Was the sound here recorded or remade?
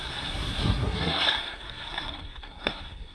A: remade